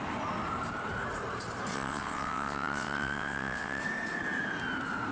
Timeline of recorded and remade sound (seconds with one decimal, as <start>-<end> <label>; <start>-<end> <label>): 0.0-1.7 recorded; 1.7-3.8 remade; 3.8-5.1 recorded